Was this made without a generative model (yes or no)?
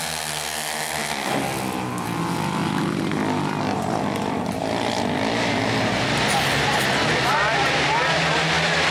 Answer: yes